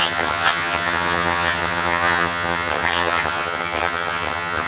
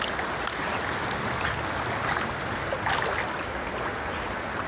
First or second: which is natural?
second